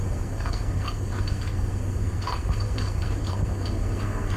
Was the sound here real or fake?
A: fake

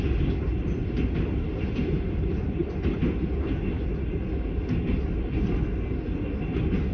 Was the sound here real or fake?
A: real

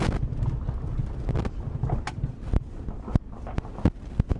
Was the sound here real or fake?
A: real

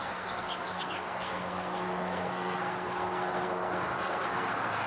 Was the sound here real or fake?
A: fake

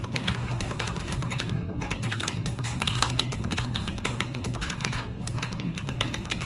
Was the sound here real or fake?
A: fake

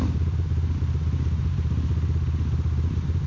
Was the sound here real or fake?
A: real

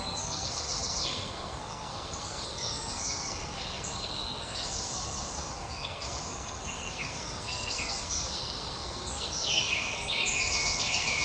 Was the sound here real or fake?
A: fake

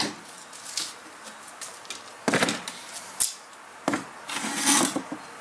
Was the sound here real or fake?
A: real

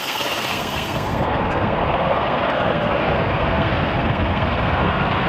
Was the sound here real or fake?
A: fake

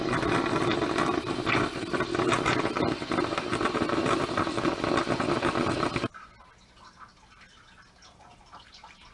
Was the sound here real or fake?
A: real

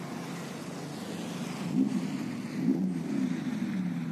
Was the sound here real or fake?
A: real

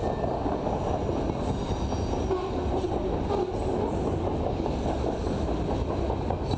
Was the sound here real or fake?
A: real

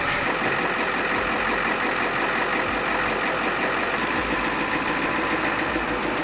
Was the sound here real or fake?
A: real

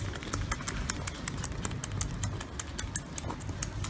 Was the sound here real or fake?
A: real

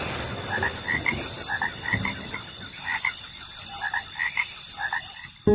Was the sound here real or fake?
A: real